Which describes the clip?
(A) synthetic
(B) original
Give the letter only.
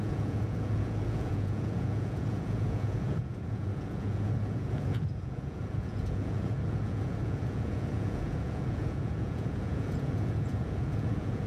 A